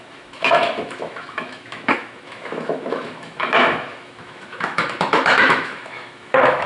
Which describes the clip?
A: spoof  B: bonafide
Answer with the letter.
A